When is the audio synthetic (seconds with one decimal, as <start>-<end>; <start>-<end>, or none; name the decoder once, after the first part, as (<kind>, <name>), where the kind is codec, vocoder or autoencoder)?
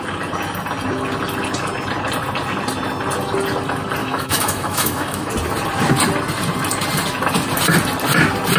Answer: 4.0-5.3 (autoencoder, DAC-VAE)